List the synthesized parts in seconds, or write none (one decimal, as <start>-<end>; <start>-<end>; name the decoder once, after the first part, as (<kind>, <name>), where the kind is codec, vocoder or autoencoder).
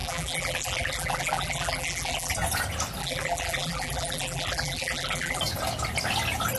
0.0-2.3 (vocoder, BigVGAN v2); 3.0-5.4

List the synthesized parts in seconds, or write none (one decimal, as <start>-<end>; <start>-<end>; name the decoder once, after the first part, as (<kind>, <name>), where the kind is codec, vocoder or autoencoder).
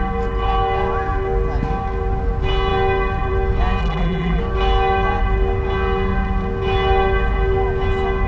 3.8-4.4 (vocoder, BigVGAN v2)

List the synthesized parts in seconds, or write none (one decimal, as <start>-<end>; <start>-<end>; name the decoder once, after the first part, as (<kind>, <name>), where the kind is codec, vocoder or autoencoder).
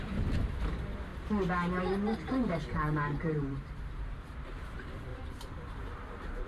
0.0-1.1 (vocoder, BigVGAN v2); 1.8-5.1; 5.7-6.5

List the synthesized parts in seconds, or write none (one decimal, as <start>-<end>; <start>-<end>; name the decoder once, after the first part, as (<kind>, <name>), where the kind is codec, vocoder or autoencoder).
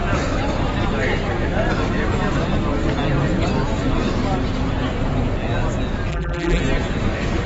6.1-6.6 (vocoder, BigVGAN v2)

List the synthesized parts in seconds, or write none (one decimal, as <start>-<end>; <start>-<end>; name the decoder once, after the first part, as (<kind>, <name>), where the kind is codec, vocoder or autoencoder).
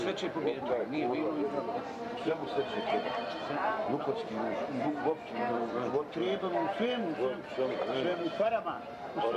0.0-2.4 (vocoder, BigVGAN v2); 4.3-9.4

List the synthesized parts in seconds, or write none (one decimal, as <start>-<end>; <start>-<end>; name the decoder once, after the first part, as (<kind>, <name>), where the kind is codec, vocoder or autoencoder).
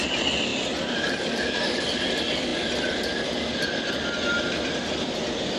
0.5-1.8 (vocoder, BigVGAN v2)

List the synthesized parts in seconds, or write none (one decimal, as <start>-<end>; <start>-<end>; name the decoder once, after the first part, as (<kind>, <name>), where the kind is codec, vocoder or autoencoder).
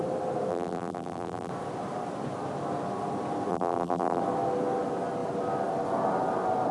0.5-1.5 (vocoder, BigVGAN v2); 3.5-4.2